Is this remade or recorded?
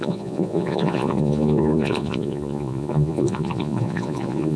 remade